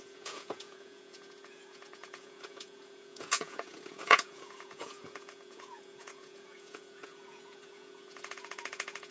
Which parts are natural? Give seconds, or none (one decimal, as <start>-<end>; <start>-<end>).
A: none